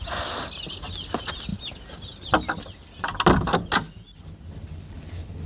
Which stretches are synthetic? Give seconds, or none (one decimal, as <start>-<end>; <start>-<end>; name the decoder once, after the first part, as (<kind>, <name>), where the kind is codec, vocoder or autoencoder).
none